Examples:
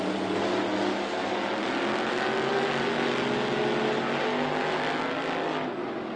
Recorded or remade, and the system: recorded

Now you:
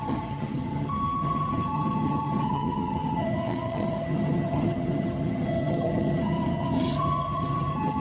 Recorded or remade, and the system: remade, vocoder, HiFi-GAN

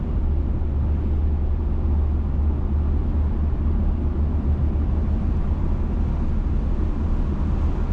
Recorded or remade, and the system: recorded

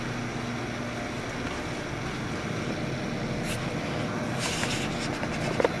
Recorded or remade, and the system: recorded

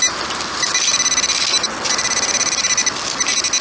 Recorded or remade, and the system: recorded